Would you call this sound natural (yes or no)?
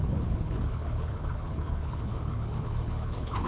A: no